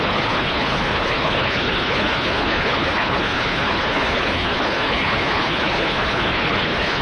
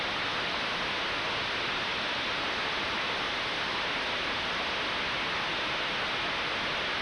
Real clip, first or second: second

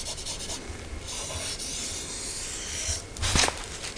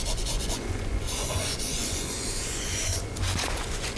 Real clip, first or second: first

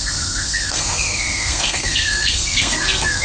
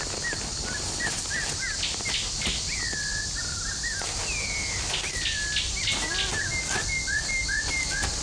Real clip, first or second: second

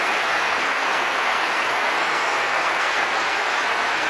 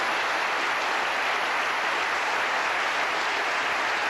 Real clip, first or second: second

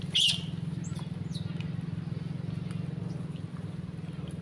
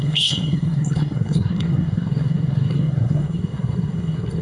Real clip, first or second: first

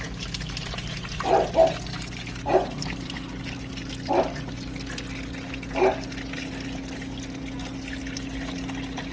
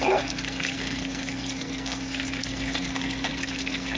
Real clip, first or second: first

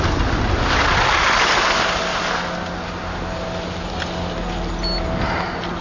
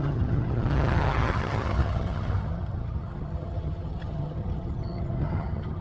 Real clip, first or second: first